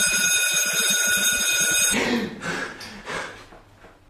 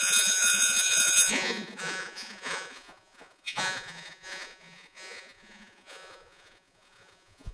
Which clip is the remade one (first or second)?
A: second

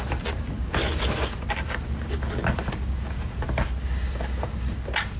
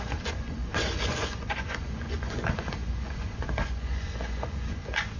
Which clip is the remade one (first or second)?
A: second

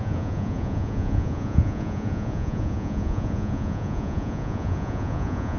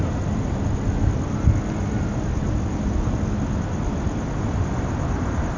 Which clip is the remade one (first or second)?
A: first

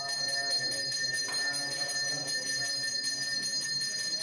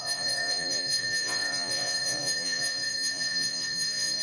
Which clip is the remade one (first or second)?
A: second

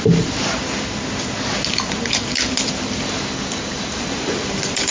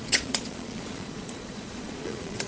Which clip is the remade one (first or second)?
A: second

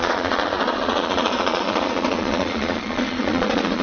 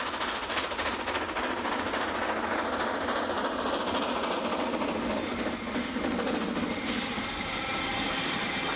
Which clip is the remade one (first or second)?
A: first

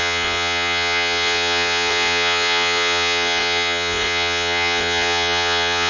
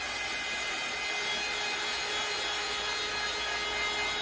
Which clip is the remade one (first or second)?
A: first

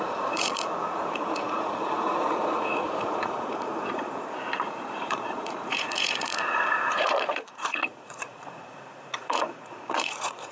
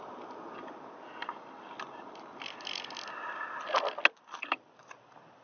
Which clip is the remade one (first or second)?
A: first